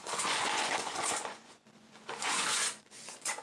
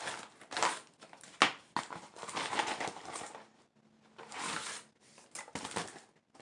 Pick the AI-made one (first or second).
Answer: first